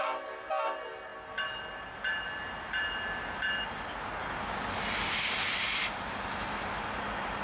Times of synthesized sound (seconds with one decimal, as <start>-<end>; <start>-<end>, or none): none